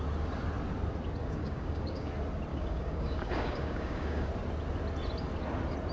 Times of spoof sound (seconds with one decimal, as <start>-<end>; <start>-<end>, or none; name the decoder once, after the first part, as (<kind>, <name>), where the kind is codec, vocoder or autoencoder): 1.2-2.1 (codec, DAC); 2.5-4.3